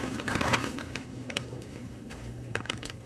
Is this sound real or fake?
fake